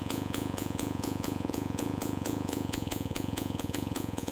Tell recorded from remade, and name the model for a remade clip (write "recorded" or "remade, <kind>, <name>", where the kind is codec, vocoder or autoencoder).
remade, vocoder, Vocos